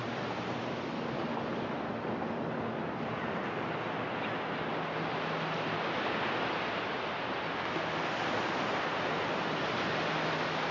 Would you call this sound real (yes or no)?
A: yes